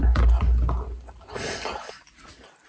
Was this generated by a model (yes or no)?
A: no